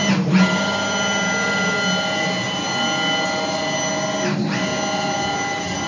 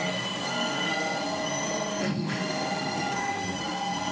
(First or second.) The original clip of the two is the first